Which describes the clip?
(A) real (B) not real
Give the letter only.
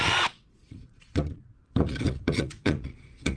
B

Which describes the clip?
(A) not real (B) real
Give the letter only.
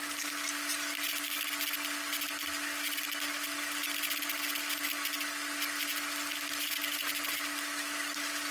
B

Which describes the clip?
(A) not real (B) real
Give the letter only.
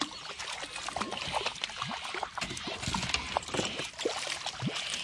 B